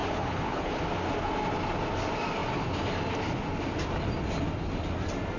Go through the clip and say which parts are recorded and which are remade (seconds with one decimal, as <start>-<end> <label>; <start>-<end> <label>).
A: 0.0-0.7 remade; 0.7-5.4 recorded